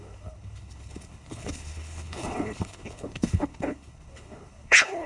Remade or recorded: remade